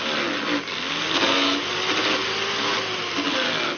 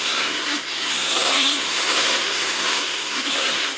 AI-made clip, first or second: second